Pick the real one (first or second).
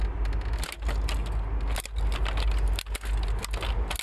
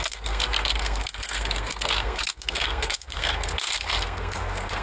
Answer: first